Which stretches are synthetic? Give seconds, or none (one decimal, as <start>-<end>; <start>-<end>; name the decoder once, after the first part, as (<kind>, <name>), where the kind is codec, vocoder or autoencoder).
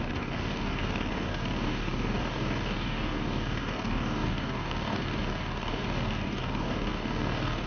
0.0-7.7 (codec, DAC)